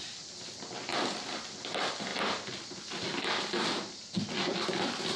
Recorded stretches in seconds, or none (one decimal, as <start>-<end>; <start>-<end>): 0.0-5.2